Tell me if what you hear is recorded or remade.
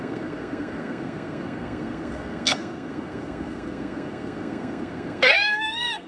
remade